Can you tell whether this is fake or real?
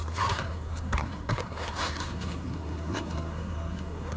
fake